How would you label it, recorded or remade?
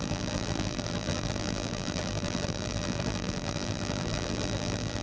remade